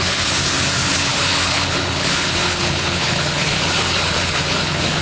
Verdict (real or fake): fake